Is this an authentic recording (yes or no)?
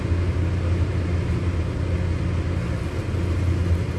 yes